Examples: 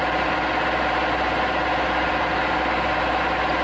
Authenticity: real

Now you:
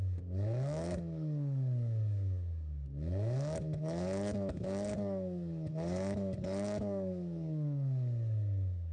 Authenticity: fake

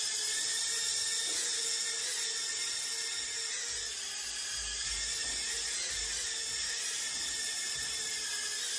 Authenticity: real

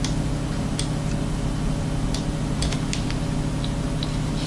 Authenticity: real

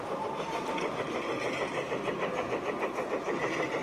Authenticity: fake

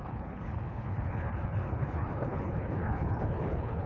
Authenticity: fake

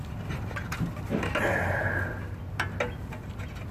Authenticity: real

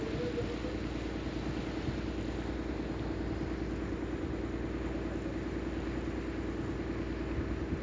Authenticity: real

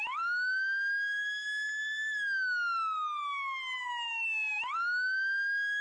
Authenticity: real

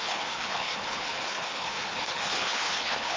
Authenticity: fake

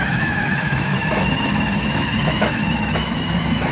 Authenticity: fake